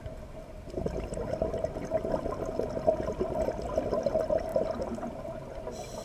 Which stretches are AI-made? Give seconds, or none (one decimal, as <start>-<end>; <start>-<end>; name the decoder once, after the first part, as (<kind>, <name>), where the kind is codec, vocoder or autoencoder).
4.5-5.6 (vocoder, BigVGAN v2)